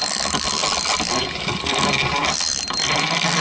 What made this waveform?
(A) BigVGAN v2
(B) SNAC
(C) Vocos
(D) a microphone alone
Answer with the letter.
D